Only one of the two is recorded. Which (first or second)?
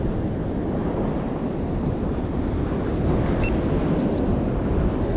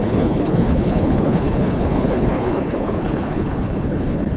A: first